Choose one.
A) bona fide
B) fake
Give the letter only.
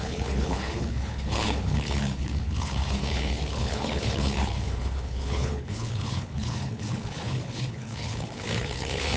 B